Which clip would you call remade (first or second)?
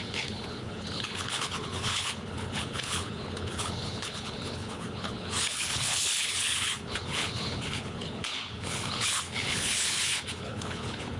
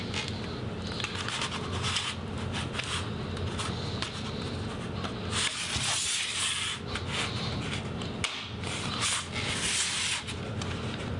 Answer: first